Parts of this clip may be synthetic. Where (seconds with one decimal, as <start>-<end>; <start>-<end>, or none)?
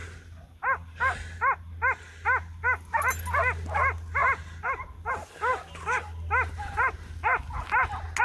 none